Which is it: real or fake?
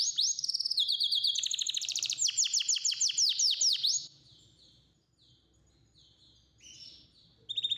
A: real